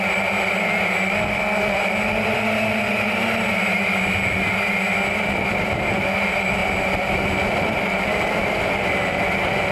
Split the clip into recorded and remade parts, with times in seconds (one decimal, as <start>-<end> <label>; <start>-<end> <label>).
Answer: 0.0-9.7 recorded